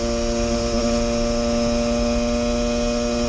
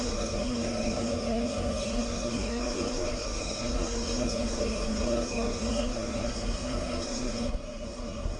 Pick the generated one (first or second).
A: second